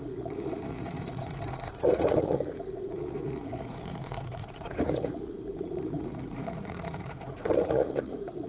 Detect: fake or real fake